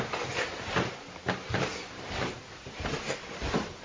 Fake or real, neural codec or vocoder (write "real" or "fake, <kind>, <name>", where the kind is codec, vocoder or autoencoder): fake, vocoder, BigVGAN v2